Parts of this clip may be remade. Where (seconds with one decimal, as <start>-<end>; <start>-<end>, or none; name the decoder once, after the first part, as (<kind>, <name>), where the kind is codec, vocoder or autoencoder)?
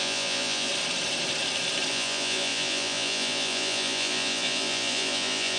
0.0-0.7 (vocoder, Vocos); 1.9-5.6